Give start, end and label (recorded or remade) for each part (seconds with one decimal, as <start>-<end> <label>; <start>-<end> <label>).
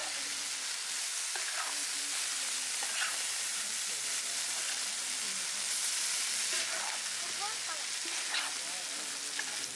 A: 0.0-3.1 recorded; 3.1-3.9 remade; 3.9-9.8 recorded